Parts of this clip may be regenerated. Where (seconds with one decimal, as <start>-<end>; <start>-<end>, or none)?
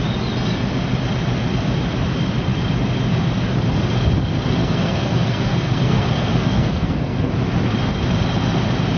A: 4.6-7.3